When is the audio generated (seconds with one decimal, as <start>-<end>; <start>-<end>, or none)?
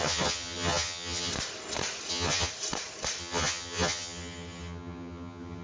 0.0-1.3; 2.1-2.5; 3.2-5.6